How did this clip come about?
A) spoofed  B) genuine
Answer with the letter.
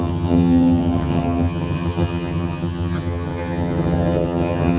A